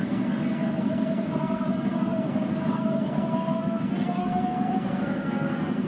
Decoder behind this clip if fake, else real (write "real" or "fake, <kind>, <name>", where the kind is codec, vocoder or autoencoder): fake, codec, SNAC